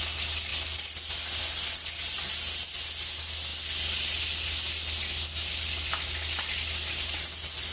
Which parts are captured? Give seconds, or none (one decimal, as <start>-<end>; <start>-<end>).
0.0-7.7

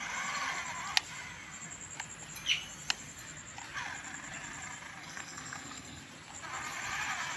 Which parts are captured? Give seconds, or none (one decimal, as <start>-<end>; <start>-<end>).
0.0-5.0; 6.0-7.4

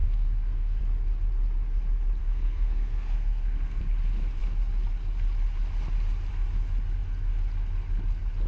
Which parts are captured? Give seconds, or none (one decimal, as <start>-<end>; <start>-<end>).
0.8-2.2; 3.8-8.5

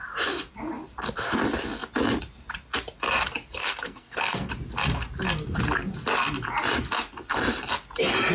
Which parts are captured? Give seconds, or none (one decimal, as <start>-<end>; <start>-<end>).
0.0-3.6; 4.5-8.3

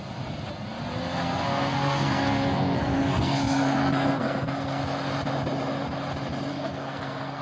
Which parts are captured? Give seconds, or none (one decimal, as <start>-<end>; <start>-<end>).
0.0-1.2; 4.8-6.5

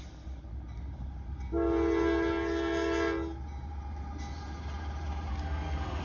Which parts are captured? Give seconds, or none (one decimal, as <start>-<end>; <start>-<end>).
0.0-5.3

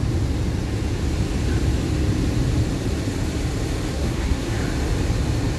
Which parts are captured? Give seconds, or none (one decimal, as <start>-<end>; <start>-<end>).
0.0-3.9; 4.6-5.6

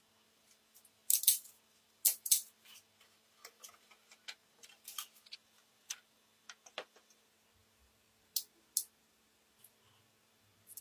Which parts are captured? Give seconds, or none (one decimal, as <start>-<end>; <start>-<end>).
0.0-10.8